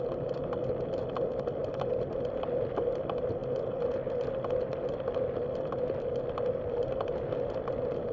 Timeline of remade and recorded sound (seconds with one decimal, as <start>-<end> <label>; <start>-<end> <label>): 0.0-8.1 recorded